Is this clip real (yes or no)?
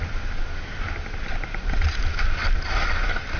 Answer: yes